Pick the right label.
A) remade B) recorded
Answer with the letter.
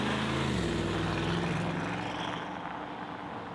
B